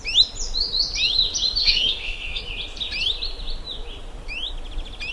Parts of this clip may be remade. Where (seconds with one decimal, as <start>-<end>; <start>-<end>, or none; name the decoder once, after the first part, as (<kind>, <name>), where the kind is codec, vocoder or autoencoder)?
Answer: 1.6-2.4 (codec, SNAC)